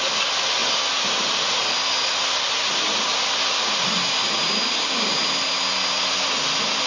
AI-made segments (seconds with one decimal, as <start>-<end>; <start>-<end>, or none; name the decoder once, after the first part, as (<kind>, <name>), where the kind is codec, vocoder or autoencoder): none